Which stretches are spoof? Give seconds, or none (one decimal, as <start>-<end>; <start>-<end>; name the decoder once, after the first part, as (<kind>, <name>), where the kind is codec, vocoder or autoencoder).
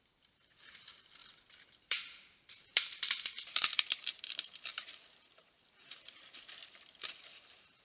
0.0-7.8 (vocoder, BigVGAN v2)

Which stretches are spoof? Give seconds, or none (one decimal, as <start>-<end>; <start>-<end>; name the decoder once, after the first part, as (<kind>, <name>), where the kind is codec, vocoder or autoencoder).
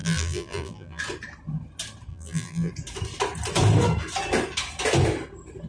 0.0-1.0 (vocoder, BigVGAN v2); 2.1-2.7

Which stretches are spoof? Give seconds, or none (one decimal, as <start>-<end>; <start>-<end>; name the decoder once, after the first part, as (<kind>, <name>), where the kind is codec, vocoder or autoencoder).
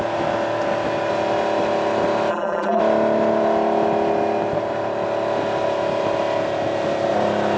2.3-2.8 (vocoder, BigVGAN v2)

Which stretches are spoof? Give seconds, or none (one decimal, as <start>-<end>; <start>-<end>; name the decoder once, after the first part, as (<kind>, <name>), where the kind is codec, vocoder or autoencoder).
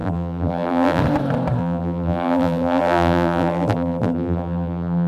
0.0-1.0 (vocoder, BigVGAN v2); 1.6-5.1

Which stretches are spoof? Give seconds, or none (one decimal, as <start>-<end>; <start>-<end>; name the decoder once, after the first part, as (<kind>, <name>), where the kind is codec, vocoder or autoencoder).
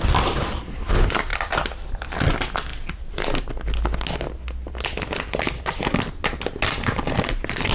0.0-2.7 (vocoder, BigVGAN v2); 7.3-7.7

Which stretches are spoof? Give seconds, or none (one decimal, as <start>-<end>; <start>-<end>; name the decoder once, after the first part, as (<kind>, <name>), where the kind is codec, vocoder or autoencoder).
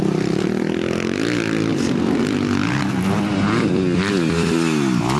1.7-2.2 (vocoder, BigVGAN v2)